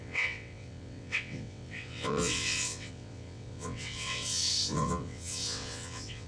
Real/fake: fake